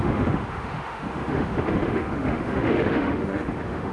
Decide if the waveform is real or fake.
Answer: fake